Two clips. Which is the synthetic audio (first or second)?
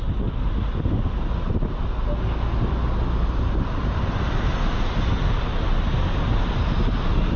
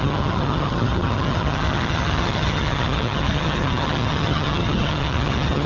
second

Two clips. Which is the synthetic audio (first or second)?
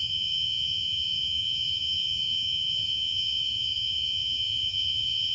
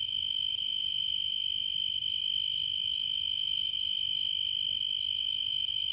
first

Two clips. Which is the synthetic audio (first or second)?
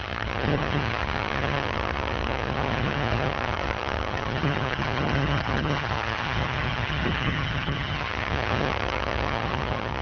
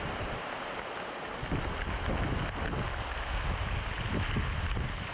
first